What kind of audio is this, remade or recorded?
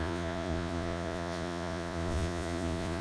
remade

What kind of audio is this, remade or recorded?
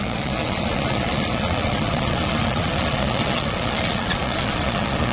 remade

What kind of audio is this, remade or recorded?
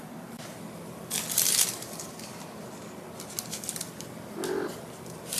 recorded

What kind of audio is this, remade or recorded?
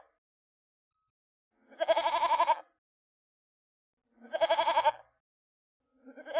recorded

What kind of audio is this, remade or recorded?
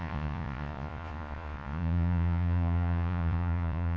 remade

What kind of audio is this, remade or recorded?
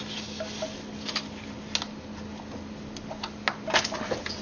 recorded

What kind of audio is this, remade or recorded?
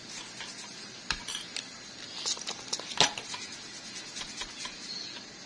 recorded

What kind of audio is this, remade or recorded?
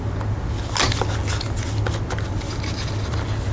recorded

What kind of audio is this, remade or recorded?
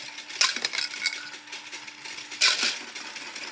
recorded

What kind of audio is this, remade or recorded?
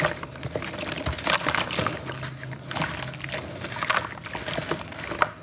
recorded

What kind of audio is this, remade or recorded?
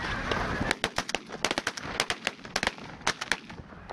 recorded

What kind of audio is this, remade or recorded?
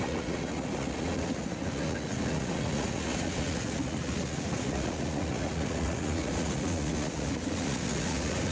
remade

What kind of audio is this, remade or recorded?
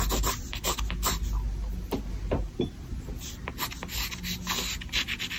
recorded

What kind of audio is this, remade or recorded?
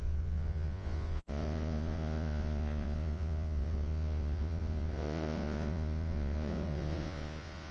remade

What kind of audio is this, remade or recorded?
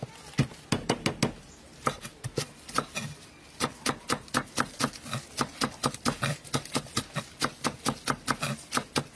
recorded